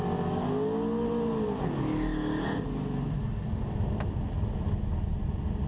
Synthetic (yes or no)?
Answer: no